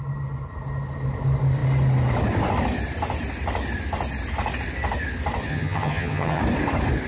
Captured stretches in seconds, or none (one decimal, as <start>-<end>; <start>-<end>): 0.0-5.5; 6.4-7.1